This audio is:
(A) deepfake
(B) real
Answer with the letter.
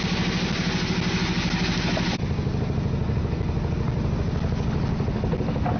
B